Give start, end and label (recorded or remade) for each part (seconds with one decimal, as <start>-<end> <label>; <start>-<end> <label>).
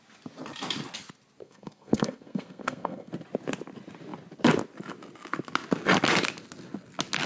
0.0-1.4 recorded; 1.4-3.1 remade; 3.1-7.3 recorded